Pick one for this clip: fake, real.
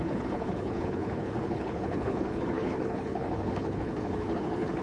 fake